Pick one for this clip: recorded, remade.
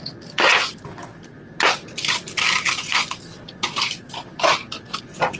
recorded